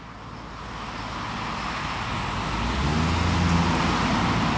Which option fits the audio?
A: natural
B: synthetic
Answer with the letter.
A